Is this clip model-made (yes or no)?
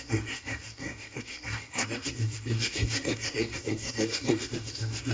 yes